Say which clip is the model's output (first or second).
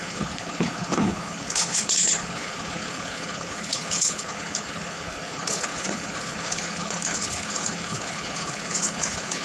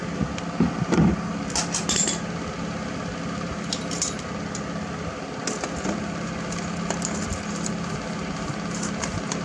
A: first